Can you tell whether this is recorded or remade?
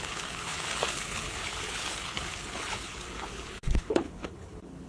remade